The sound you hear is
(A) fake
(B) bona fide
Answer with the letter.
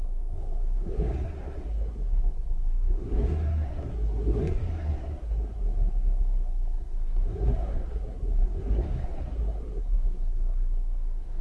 A